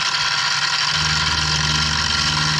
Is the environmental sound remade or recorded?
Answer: recorded